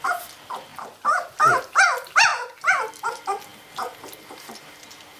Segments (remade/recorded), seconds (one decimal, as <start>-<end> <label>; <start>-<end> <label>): 0.0-2.3 recorded; 2.3-2.9 remade; 2.9-5.2 recorded